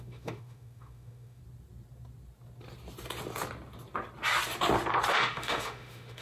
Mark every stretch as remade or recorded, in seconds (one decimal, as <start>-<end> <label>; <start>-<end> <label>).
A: 0.0-1.4 remade; 1.4-5.1 recorded; 5.1-6.2 remade